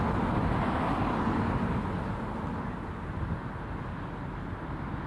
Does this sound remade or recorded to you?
recorded